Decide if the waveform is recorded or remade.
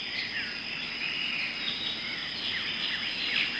recorded